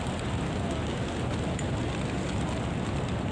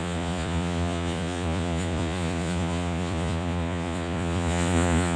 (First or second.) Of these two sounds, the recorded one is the first